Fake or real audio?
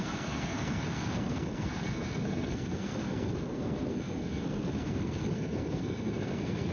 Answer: fake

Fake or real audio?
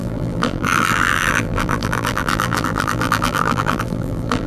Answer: fake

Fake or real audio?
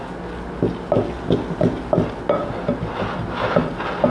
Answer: real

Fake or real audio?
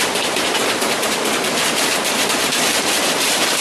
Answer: fake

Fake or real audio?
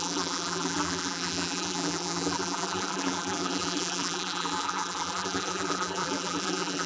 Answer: fake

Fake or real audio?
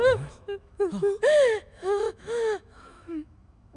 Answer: fake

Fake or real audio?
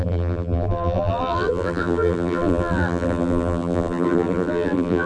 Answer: fake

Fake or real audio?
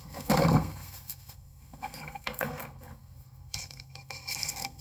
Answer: fake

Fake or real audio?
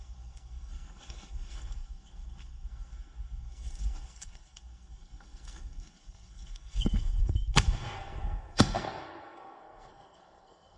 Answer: fake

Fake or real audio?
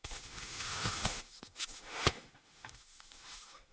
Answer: fake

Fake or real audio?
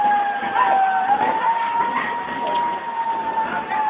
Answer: real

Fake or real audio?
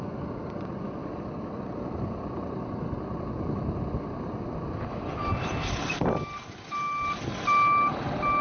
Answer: real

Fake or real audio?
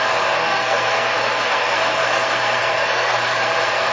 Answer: fake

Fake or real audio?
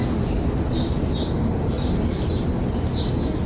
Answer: real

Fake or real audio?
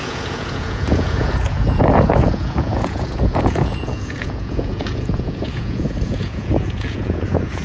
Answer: fake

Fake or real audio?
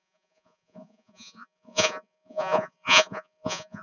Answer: fake